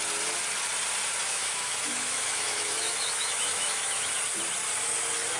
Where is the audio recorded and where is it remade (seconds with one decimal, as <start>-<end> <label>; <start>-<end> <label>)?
0.0-1.3 recorded; 1.3-4.1 remade; 4.1-5.4 recorded